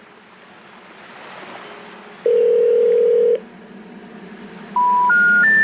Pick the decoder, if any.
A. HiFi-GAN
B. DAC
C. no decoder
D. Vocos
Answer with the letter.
C